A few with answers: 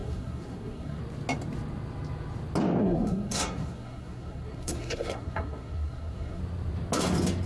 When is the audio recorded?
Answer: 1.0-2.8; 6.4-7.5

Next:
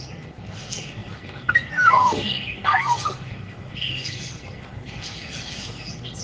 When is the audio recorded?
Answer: none

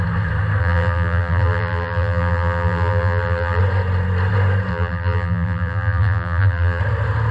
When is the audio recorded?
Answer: 0.0-0.6; 3.6-4.7; 6.8-7.3

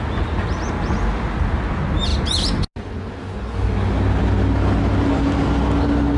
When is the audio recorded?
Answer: 0.0-6.2

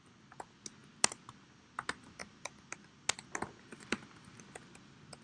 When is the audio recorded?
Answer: 0.0-5.2